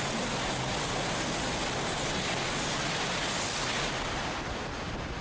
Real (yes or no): yes